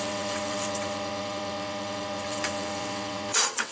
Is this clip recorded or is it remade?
remade